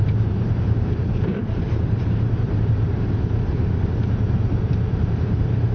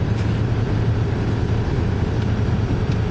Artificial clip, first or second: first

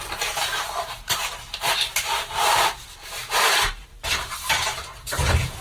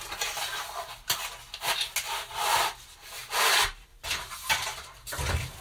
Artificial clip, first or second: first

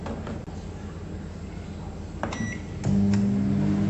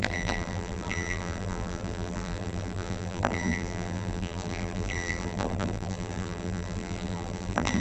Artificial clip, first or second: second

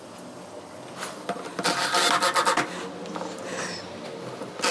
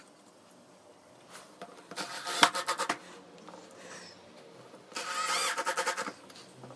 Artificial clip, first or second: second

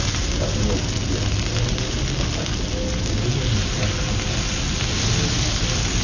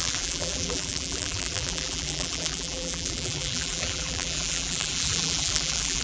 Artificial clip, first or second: second